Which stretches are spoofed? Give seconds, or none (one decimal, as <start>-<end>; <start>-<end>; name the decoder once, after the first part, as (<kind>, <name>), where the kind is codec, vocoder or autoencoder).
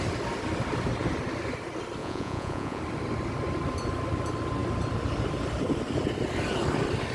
2.0-2.8 (vocoder, Vocos)